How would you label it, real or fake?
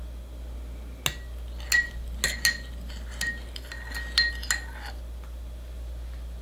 real